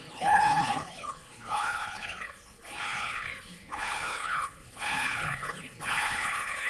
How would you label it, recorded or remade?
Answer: remade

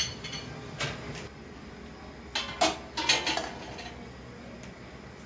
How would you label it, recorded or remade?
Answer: recorded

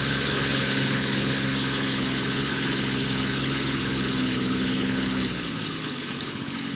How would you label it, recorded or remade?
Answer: remade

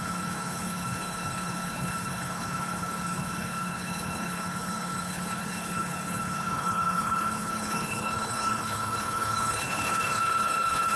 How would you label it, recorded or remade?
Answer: remade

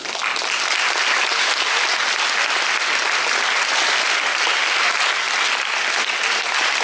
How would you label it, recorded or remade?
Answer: recorded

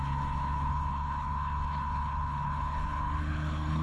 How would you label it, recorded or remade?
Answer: remade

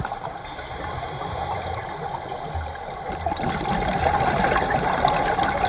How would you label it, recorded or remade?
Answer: recorded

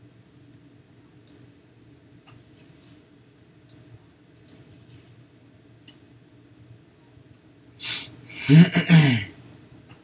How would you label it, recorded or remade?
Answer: recorded